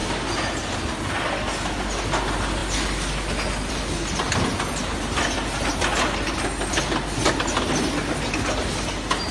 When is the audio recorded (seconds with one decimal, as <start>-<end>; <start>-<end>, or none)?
0.0-9.3